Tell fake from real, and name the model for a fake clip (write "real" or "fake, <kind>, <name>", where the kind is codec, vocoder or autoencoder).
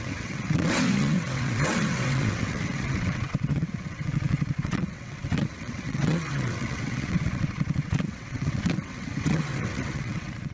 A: fake, vocoder, WaveNeXt